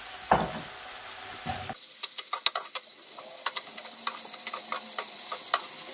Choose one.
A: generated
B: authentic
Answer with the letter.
B